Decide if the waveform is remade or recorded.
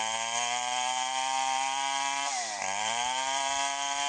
remade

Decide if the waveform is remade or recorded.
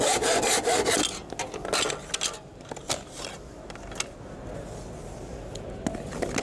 recorded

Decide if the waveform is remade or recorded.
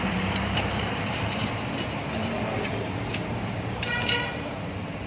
remade